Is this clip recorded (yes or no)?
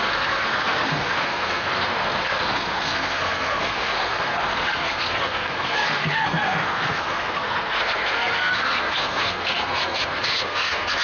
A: no